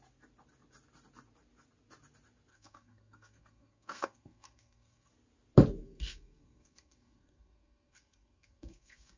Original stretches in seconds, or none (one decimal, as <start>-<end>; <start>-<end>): 0.0-2.5; 5.1-5.8